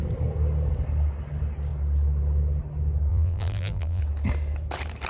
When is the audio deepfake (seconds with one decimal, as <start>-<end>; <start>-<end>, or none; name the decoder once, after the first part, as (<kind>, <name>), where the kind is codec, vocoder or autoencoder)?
3.1-4.0 (vocoder, BigVGAN v2)